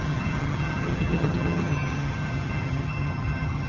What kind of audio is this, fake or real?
fake